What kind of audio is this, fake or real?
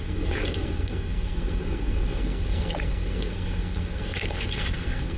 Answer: fake